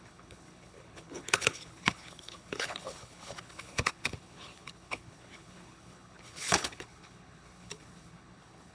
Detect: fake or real fake